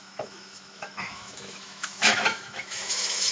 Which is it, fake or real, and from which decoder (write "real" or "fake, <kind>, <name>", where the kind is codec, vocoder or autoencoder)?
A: fake, autoencoder, DAC-VAE